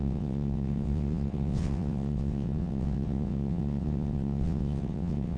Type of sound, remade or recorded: remade